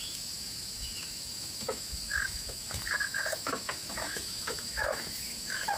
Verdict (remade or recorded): remade